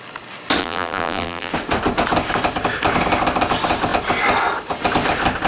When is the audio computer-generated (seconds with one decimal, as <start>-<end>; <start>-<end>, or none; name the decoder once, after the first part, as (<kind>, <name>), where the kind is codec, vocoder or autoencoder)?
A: 0.6-1.5 (vocoder, BigVGAN v2)